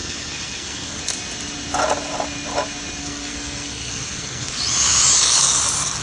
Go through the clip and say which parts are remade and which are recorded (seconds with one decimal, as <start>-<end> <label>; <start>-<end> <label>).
0.0-1.0 remade; 1.0-3.0 recorded; 3.0-4.6 remade; 4.6-6.0 recorded